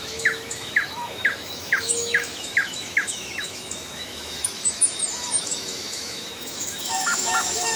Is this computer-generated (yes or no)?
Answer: yes